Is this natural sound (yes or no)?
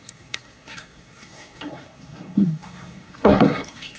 no